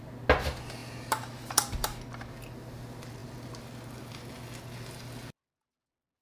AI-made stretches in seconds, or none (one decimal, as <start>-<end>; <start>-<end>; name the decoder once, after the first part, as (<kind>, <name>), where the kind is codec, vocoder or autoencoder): none